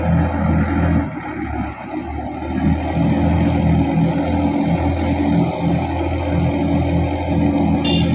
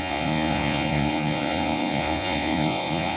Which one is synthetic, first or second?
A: second